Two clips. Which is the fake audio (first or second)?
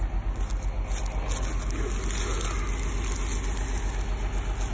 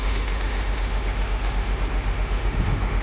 second